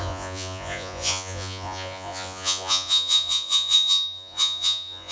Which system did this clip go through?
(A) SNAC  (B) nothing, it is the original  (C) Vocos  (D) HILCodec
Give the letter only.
C